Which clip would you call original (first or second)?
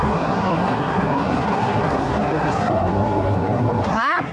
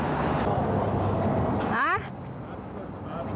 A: second